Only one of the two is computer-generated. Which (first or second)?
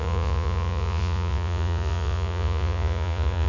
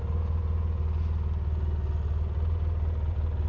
first